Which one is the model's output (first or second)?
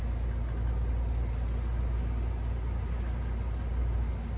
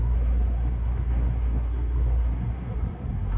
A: second